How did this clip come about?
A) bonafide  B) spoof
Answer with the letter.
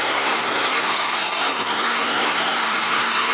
B